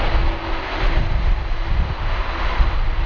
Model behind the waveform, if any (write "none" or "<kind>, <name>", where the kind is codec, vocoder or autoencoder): none